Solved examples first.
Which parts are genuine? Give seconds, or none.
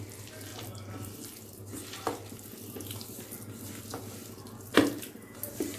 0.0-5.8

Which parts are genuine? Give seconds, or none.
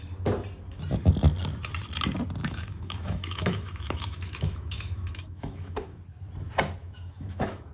0.0-2.4; 6.0-6.8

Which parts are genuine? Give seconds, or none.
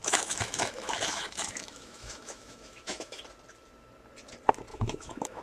3.2-4.7